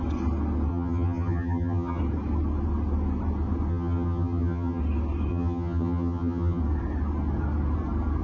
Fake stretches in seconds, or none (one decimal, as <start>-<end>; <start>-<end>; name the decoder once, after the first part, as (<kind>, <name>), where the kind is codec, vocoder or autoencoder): 0.7-2.0 (vocoder, HiFi-GAN); 3.7-4.8; 5.3-6.6